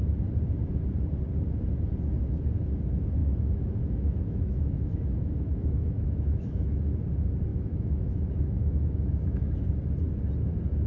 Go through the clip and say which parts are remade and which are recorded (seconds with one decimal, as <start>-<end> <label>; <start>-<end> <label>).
0.0-3.2 recorded; 3.2-6.8 remade; 6.8-7.5 recorded; 7.5-9.7 remade; 9.7-10.9 recorded